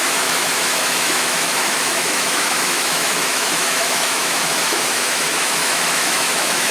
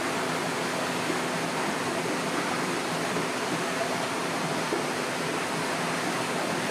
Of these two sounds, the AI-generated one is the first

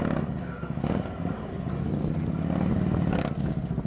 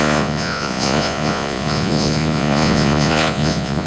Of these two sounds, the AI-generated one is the second